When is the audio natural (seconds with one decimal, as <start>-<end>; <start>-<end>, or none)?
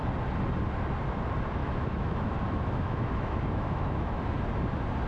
0.0-1.6; 4.2-5.1